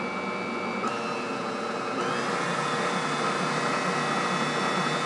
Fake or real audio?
real